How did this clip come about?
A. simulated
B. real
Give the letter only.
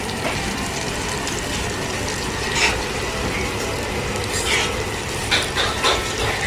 B